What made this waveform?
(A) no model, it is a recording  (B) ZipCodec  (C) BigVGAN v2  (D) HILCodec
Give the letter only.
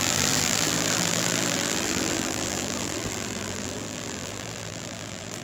C